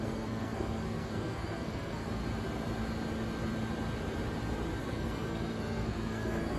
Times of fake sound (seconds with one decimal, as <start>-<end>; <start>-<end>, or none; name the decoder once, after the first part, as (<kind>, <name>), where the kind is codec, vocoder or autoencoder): 0.0-2.2 (codec, SNAC); 4.8-6.6